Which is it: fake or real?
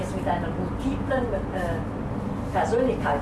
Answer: real